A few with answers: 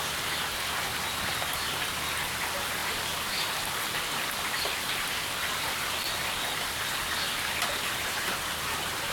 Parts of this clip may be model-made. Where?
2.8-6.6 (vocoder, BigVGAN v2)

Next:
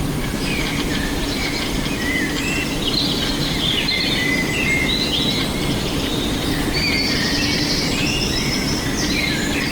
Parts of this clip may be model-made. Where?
none

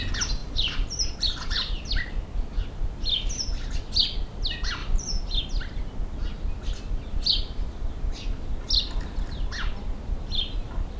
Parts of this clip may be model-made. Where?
0.4-2.2 (vocoder, BigVGAN v2); 4.8-5.4

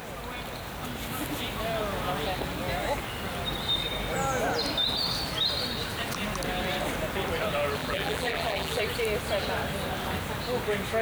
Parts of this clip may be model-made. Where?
7.8-8.8 (vocoder, BigVGAN v2)

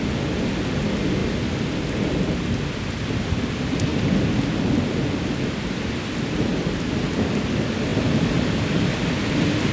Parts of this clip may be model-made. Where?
none

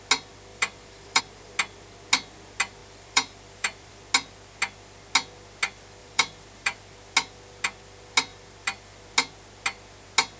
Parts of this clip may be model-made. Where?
0.5-1.2 (vocoder, BigVGAN v2); 2.8-3.9; 6.0-6.8